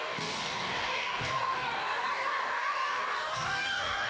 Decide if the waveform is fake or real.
fake